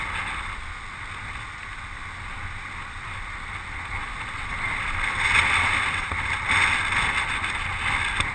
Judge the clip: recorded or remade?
recorded